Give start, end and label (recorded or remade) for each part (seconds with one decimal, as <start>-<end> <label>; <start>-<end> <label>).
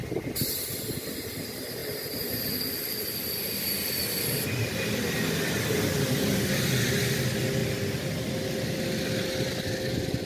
0.0-10.3 recorded